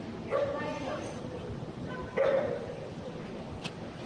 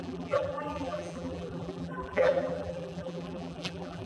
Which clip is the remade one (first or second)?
second